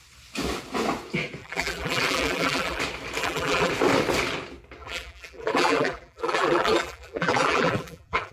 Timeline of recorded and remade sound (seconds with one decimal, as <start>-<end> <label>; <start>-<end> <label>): 0.0-1.4 recorded; 1.4-2.8 remade; 2.8-3.2 recorded; 3.2-3.7 remade; 3.7-4.8 recorded; 4.8-8.3 remade